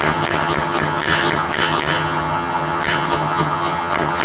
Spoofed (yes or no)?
yes